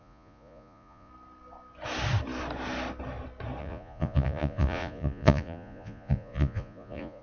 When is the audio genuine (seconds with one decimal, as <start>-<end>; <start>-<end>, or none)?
1.1-3.6